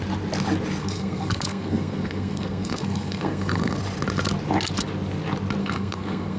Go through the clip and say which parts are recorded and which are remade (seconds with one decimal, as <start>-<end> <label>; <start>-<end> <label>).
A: 0.0-0.8 recorded; 0.8-3.8 remade; 3.8-5.6 recorded; 5.6-6.4 remade